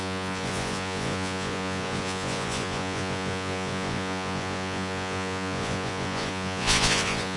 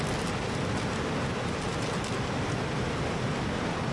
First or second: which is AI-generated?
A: first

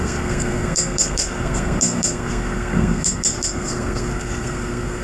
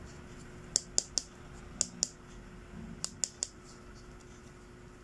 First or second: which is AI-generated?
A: first